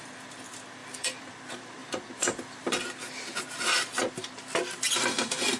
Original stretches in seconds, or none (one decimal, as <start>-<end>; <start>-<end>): 0.0-0.8; 1.3-5.6